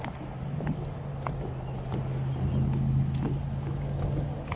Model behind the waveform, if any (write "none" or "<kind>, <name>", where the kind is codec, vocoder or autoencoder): none